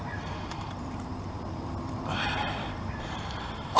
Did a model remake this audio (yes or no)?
yes